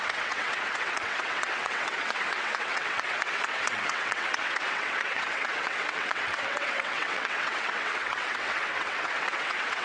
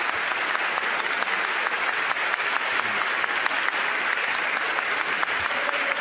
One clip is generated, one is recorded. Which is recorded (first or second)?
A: second